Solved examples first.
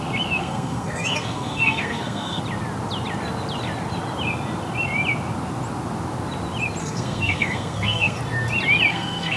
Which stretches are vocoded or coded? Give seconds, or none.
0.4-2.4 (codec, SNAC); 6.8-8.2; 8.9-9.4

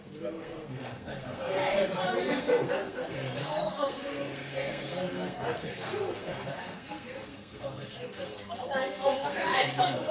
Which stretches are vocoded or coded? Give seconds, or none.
0.0-1.6 (codec, SNAC); 2.2-10.1